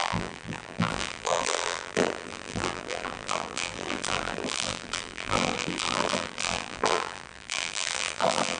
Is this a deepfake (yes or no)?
yes